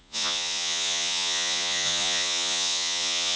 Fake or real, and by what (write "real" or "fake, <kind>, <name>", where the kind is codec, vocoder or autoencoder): fake, vocoder, Vocos